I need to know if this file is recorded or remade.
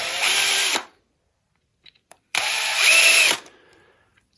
remade